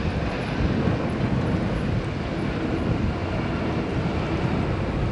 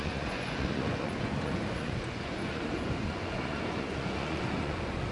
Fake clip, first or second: second